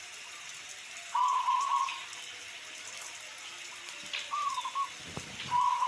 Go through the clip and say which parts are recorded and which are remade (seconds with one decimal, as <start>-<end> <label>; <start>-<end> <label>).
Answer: 0.0-1.0 recorded; 1.0-1.5 remade; 1.5-1.9 recorded; 1.9-5.4 remade; 5.4-5.9 recorded